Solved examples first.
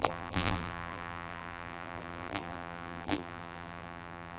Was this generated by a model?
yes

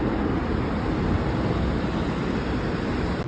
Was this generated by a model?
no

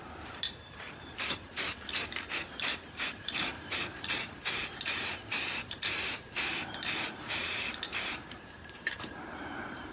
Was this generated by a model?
yes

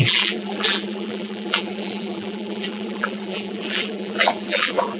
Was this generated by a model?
yes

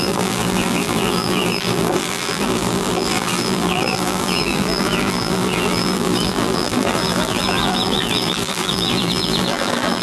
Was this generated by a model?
yes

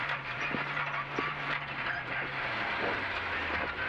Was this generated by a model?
yes